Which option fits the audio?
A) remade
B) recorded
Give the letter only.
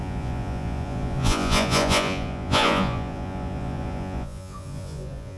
A